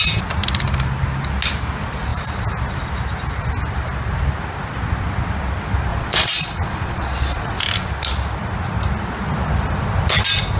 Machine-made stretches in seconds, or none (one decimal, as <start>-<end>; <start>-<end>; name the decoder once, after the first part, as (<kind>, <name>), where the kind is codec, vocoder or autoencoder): 5.9-7.6 (vocoder, Vocos)